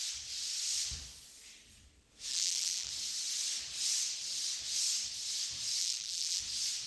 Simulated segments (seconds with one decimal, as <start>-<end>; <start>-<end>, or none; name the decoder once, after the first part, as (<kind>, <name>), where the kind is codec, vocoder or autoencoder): 2.3-2.9 (vocoder, BigVGAN v2); 5.8-6.4